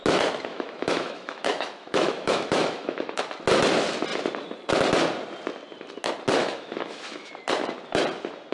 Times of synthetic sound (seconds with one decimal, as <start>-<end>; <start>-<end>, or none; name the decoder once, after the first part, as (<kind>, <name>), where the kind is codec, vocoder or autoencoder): 0.5-3.2 (autoencoder, DAC-VAE); 6.4-7.3